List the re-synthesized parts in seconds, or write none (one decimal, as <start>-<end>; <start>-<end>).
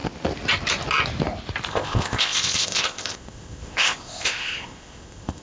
1.7-5.4